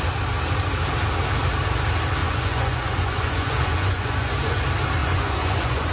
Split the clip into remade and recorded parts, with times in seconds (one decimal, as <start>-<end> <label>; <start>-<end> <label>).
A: 0.0-2.2 recorded; 2.2-4.6 remade; 4.6-5.0 recorded; 5.0-5.9 remade